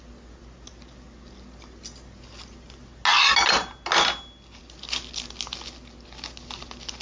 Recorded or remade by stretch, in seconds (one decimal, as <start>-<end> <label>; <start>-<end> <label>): 0.0-7.0 recorded